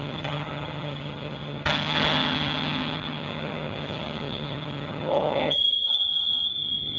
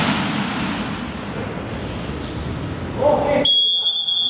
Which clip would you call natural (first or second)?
second